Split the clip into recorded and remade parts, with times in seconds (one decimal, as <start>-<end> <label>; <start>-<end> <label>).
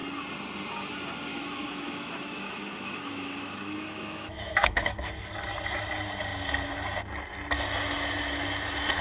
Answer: 0.0-1.3 recorded; 1.3-5.1 remade; 5.1-9.0 recorded